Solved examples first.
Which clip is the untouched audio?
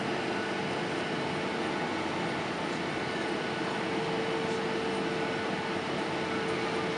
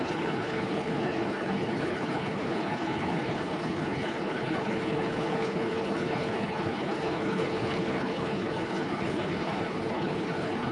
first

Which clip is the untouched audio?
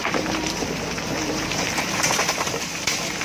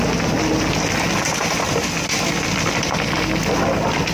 second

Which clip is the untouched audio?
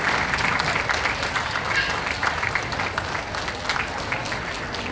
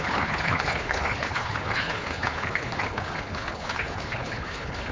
first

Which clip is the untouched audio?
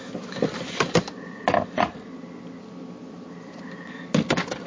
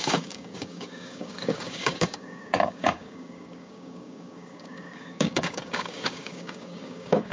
first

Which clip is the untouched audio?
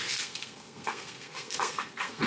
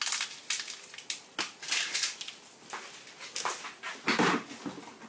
second